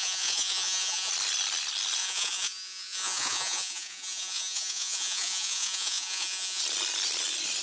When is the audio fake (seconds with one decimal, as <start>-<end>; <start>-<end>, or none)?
0.0-1.1; 2.0-6.6